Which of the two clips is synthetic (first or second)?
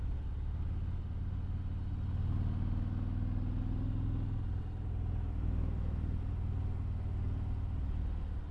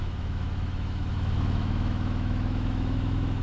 second